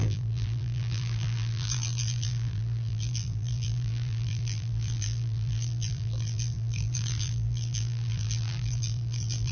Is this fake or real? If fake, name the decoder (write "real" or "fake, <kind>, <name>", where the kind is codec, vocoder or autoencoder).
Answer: fake, vocoder, BigVGAN v2